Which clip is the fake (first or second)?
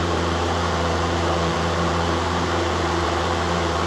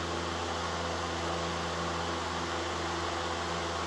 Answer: first